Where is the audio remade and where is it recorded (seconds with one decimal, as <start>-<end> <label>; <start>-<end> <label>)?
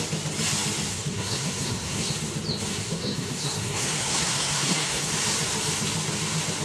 0.0-0.9 recorded; 0.9-2.1 remade; 2.1-2.7 recorded; 2.7-5.1 remade; 5.1-6.6 recorded